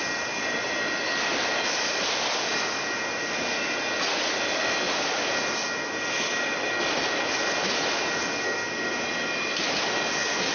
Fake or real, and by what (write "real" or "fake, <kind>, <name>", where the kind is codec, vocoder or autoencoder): real